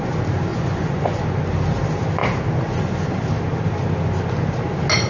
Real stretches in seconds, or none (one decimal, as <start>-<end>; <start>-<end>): 0.0-0.5; 1.2-5.1